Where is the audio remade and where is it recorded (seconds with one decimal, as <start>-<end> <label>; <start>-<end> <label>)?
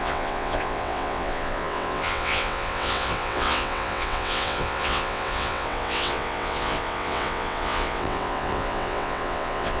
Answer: 0.0-9.8 remade